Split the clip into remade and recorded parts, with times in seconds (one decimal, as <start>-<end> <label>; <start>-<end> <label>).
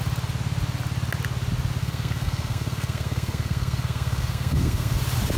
0.0-1.8 recorded; 1.8-5.0 remade; 5.0-5.4 recorded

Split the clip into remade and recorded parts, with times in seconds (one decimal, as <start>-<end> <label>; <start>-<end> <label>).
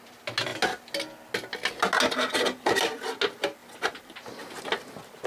0.0-5.3 recorded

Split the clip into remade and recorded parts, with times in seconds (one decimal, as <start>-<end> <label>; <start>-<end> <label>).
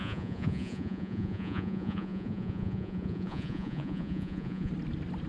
0.0-4.7 remade; 4.7-5.3 recorded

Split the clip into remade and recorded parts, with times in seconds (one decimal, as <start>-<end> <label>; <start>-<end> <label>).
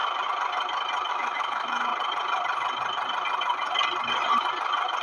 0.0-1.1 recorded; 1.1-1.9 remade; 1.9-5.0 recorded